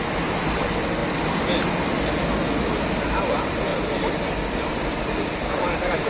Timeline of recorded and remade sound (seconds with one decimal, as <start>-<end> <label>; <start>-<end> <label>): 0.0-3.7 remade; 3.7-4.2 recorded; 4.2-6.1 remade